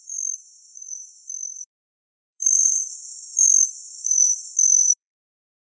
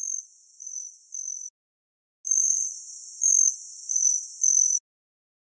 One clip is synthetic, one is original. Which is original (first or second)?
second